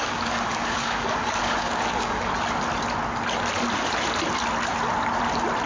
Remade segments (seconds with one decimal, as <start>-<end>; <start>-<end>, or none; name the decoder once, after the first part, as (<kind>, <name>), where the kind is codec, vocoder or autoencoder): 0.0-2.3 (codec, DAC)